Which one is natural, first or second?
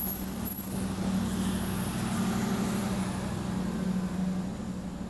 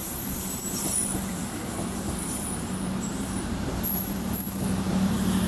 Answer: first